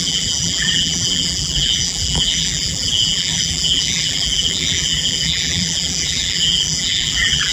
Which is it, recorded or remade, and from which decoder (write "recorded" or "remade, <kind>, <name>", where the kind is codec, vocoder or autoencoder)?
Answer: remade, vocoder, BigVGAN v2